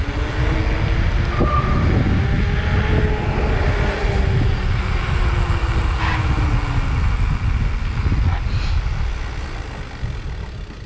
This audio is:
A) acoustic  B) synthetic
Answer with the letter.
A